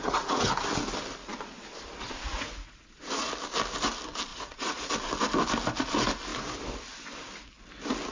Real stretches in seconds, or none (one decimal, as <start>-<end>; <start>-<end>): 0.5-2.3; 3.3-4.3; 4.9-8.1